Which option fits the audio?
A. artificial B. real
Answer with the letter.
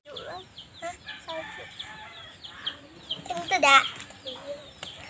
B